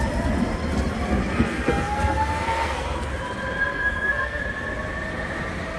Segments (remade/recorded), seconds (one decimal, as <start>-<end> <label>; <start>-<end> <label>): 0.0-1.2 recorded; 1.2-3.1 remade; 3.1-3.7 recorded; 3.7-4.4 remade; 4.4-5.8 recorded